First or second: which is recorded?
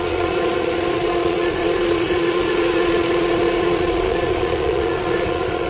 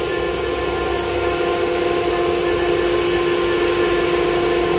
second